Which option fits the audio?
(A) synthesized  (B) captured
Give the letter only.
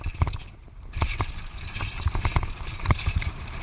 B